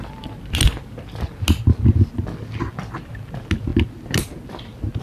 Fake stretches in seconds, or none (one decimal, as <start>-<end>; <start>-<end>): none